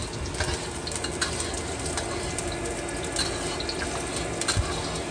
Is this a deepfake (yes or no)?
no